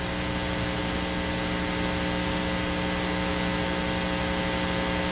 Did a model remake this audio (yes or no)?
no